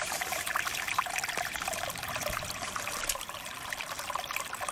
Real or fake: fake